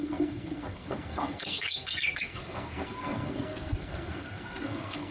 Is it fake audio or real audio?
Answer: fake